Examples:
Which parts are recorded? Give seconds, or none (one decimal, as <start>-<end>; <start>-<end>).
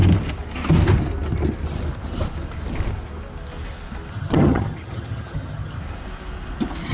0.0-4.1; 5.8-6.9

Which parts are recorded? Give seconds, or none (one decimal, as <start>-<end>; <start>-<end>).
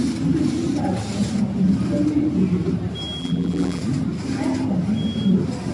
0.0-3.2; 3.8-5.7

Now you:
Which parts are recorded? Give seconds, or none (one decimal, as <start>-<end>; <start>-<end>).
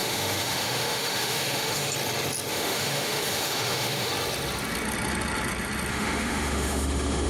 1.9-2.5; 4.1-5.9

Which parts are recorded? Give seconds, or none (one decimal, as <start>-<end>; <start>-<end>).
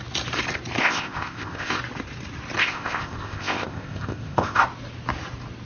0.0-0.8; 1.8-2.6; 4.6-5.7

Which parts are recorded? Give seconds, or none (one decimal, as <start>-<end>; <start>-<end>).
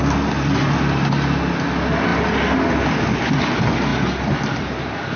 0.0-5.2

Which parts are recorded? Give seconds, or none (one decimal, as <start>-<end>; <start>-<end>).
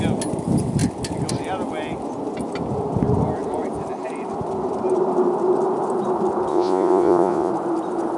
0.0-6.5; 7.5-8.2